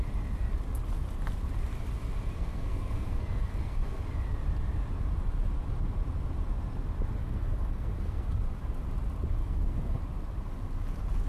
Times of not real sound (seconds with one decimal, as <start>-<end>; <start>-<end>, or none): 2.3-4.0; 7.2-8.3; 9.4-10.0